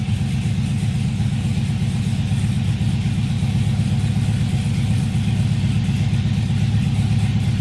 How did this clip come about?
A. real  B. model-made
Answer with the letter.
A